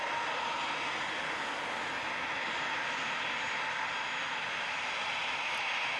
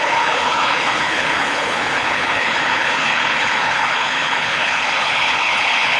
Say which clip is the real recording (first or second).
first